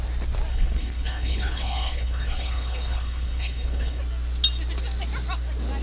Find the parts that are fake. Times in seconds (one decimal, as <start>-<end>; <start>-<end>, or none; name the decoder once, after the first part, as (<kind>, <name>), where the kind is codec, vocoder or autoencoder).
0.5-4.0 (codec, HILCodec)